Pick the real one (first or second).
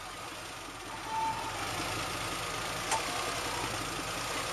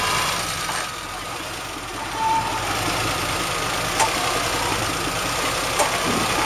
first